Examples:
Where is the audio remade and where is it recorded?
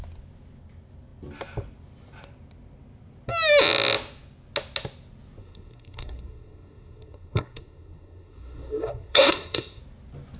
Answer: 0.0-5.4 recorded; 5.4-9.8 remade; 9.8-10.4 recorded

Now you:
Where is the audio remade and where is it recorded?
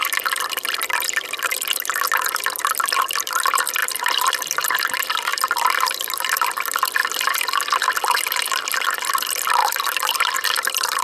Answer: 0.0-3.8 recorded; 3.8-4.7 remade; 4.7-5.3 recorded; 5.3-6.5 remade; 6.5-9.6 recorded; 9.6-11.0 remade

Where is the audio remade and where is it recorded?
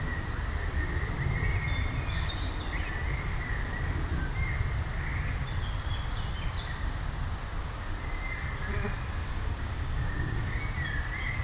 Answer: 0.0-9.2 recorded; 9.2-10.6 remade; 10.6-11.4 recorded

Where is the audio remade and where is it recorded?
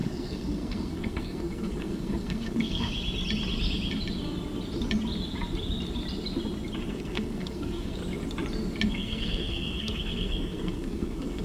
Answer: 0.0-2.9 remade; 2.9-6.9 recorded; 6.9-8.0 remade; 8.0-8.9 recorded; 8.9-11.4 remade